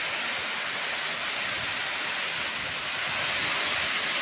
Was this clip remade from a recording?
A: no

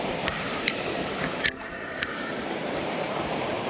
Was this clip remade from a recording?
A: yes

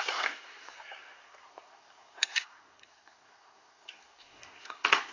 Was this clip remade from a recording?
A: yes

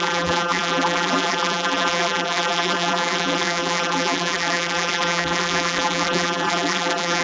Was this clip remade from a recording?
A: yes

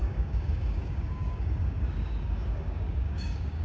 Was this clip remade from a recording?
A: yes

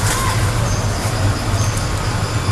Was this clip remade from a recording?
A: no